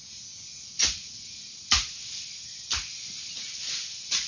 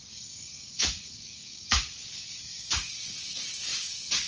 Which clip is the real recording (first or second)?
first